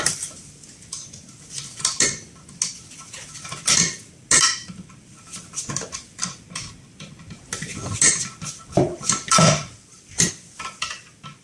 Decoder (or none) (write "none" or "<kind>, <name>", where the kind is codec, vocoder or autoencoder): none